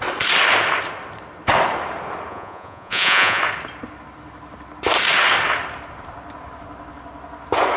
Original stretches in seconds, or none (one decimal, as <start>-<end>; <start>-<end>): 0.0-2.3; 3.4-7.8

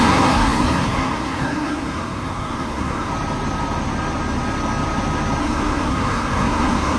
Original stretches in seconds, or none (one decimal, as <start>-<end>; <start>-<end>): 3.1-5.4

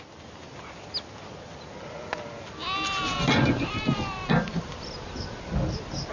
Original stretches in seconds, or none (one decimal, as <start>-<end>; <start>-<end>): 0.0-6.1

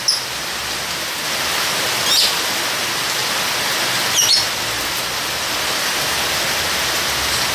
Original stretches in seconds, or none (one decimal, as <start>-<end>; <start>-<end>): 0.0-7.5

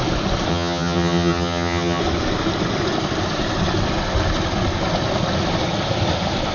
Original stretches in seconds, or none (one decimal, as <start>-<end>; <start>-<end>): 0.0-0.5; 2.0-6.5

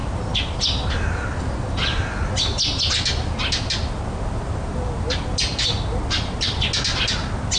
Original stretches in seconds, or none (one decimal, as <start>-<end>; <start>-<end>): 0.0-7.6